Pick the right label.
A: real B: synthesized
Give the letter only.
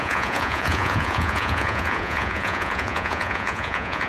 B